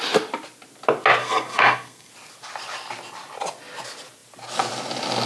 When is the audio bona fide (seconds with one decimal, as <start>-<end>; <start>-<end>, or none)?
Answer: 0.0-1.2; 2.1-5.3